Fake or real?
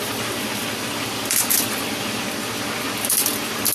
real